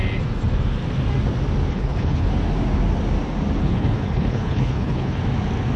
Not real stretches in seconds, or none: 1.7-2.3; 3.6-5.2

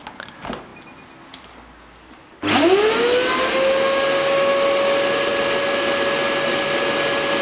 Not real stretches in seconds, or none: none